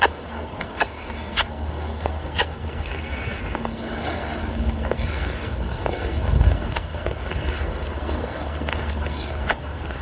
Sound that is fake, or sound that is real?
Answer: fake